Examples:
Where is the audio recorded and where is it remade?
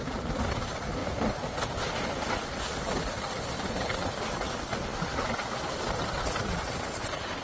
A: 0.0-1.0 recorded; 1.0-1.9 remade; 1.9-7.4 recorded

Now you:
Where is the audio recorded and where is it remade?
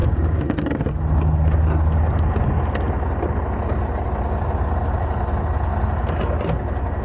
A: 0.0-1.0 remade; 1.0-7.0 recorded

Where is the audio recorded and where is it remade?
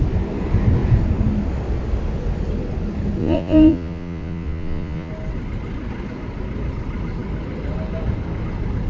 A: 0.0-3.2 recorded; 3.2-5.1 remade; 5.1-8.9 recorded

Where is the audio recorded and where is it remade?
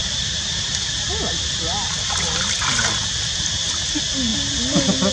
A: 0.0-3.1 remade; 3.1-4.3 recorded; 4.3-5.1 remade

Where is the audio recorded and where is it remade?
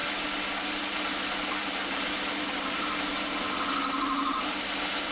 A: 0.0-5.1 recorded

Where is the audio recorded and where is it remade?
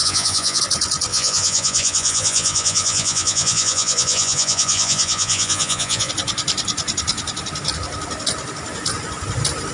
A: 0.0-0.6 remade; 0.6-1.1 recorded; 1.1-6.1 remade; 6.1-9.7 recorded